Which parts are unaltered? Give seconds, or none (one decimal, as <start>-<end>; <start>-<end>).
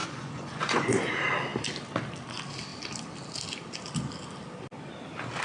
1.1-5.4